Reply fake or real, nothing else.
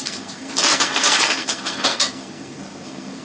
fake